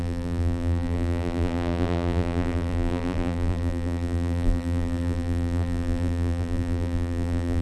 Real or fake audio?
fake